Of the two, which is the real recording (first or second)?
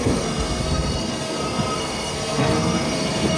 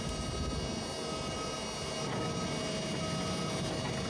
second